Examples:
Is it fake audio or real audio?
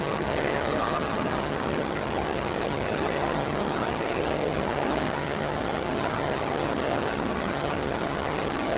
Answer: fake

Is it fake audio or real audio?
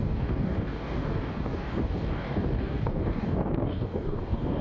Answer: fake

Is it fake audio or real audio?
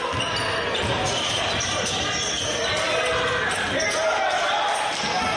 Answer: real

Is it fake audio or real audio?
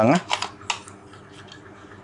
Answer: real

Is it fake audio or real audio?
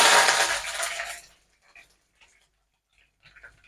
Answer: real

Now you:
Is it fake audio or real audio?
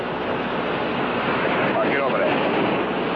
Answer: real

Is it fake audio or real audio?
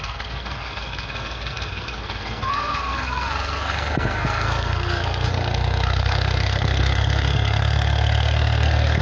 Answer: fake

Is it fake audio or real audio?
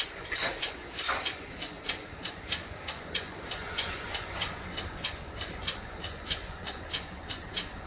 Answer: fake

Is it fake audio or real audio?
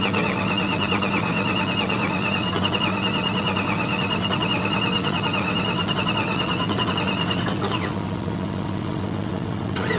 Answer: fake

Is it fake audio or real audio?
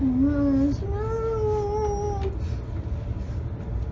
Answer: real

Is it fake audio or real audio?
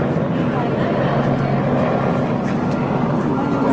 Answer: real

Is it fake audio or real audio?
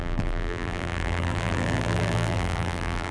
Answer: fake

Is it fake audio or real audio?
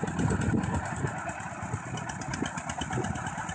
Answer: real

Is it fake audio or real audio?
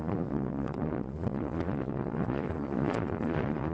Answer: fake